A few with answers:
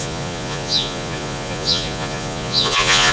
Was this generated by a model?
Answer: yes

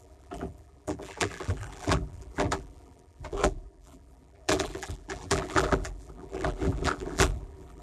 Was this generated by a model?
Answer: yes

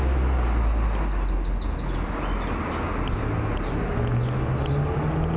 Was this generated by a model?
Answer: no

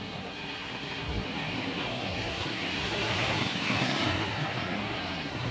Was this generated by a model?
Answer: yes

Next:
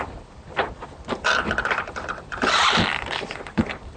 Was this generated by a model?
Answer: yes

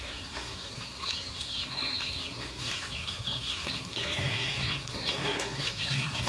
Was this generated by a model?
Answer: yes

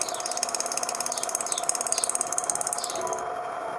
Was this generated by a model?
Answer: no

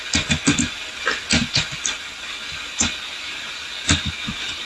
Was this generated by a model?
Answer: no